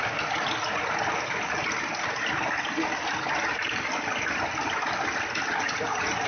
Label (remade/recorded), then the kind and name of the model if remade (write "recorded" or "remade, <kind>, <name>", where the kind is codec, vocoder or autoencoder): recorded